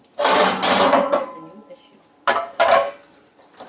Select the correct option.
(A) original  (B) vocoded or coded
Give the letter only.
A